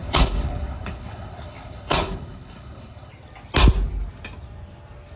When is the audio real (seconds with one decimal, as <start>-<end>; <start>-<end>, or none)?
3.1-5.2